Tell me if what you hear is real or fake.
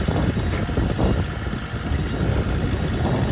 real